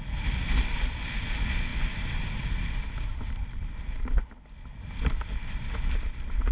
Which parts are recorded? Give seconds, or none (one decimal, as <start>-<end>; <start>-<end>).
0.0-6.5